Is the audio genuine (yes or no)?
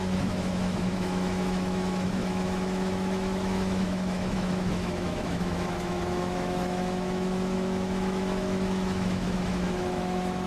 no